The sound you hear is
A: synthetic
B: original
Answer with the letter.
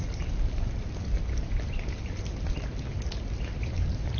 B